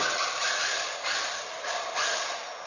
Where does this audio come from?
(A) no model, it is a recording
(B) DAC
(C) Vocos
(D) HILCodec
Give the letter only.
A